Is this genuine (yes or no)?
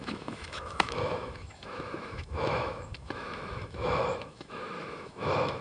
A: no